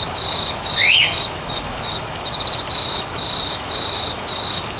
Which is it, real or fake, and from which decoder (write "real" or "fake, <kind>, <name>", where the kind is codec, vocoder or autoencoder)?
fake, autoencoder, DAC-VAE